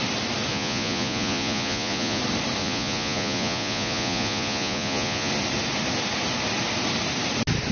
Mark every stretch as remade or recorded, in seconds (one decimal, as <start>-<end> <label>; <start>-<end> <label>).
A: 0.0-0.5 recorded; 0.5-2.2 remade; 2.2-2.6 recorded; 2.6-5.3 remade; 5.3-7.7 recorded